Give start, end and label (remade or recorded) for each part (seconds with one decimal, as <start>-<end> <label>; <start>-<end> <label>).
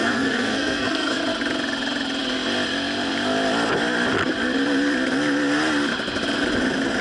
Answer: 0.0-1.2 remade; 1.2-7.0 recorded